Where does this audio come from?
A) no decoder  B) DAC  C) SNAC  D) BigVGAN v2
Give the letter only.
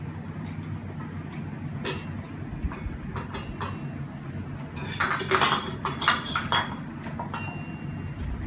A